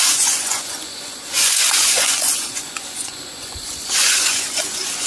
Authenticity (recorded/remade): remade